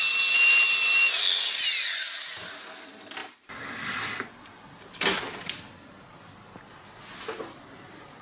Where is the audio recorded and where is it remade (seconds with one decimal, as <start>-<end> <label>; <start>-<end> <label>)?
0.0-3.2 recorded; 3.2-3.7 remade; 3.7-8.2 recorded